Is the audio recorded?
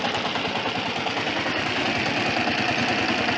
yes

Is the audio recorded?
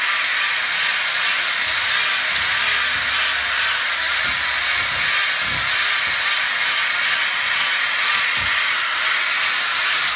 yes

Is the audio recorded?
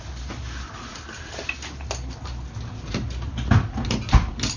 yes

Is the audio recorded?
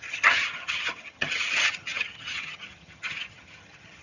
no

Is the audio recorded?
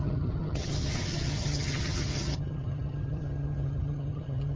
no